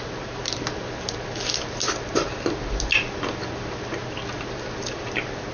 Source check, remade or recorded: recorded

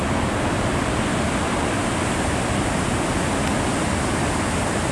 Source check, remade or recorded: recorded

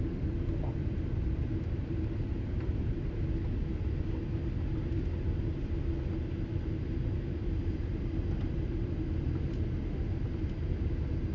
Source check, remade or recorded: recorded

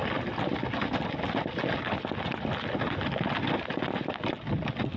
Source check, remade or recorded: recorded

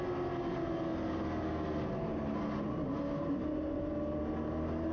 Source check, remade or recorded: recorded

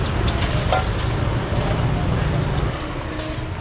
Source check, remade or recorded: recorded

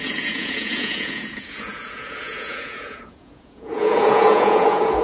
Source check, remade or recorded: remade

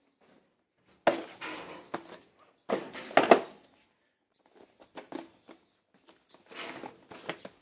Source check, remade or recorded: recorded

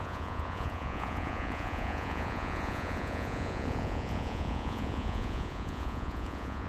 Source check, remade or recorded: remade